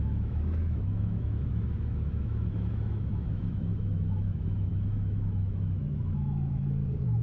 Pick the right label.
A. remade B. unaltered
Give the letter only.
A